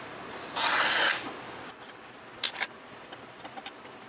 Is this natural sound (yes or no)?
no